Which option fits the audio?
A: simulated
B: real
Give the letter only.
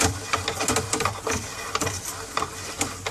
B